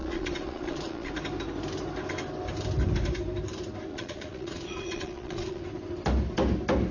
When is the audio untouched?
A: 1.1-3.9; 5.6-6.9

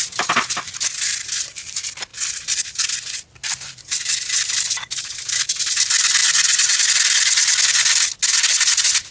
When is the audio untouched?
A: 0.0-9.1

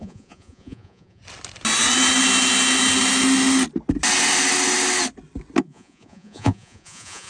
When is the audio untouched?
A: 1.2-5.6

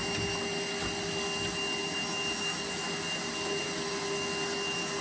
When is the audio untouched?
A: 0.0-5.0

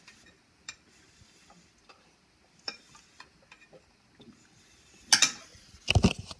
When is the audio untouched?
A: 0.0-6.4

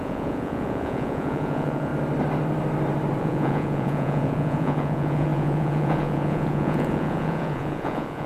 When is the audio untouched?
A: 1.9-3.2

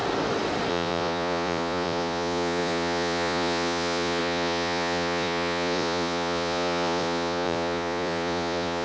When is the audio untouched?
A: 0.0-0.7